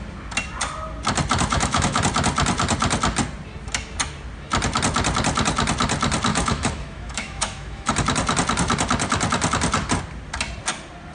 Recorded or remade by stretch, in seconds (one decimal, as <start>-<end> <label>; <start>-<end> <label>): 0.0-1.5 recorded; 1.5-2.0 remade; 2.0-6.3 recorded; 6.3-7.9 remade; 7.9-11.1 recorded